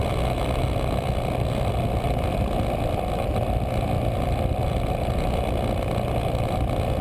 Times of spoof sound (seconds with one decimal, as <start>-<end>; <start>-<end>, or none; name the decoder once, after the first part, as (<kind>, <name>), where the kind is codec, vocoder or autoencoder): none